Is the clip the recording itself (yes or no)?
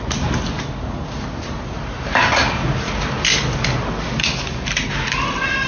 yes